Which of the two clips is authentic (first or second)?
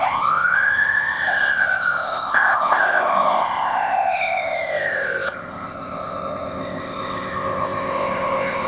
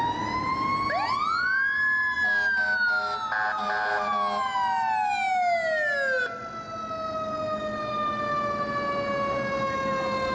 second